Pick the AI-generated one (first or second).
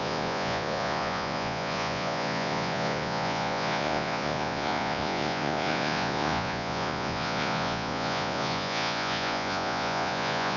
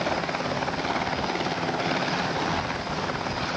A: first